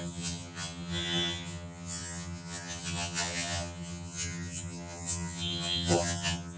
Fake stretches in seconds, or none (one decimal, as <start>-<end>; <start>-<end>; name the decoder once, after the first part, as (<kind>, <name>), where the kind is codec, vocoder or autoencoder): 0.0-6.6 (vocoder, HiFi-GAN)